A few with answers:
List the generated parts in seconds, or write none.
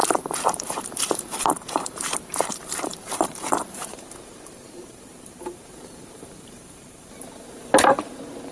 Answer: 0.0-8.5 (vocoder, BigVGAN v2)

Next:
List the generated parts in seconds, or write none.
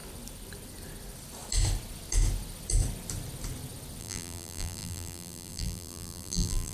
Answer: 4.0-6.7 (vocoder, BigVGAN v2)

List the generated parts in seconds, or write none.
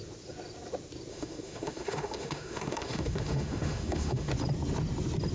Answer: 1.1-4.3 (autoencoder, DAC-VAE)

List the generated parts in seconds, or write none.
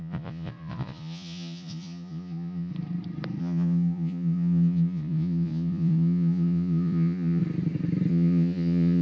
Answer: 0.0-2.7 (vocoder, Vocos); 3.4-7.4; 8.1-9.0